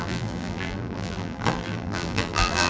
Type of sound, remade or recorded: remade